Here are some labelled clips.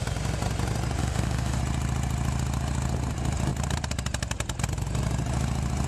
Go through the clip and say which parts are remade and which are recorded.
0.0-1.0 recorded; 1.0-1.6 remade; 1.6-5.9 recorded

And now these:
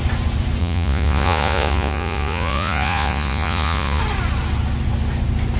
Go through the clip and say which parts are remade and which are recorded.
0.0-0.6 recorded; 0.6-4.0 remade; 4.0-5.6 recorded